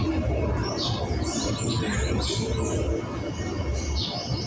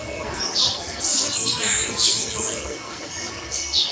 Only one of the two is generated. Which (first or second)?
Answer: second